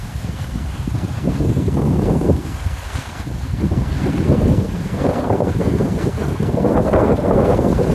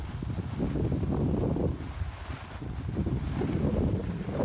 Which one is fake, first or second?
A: first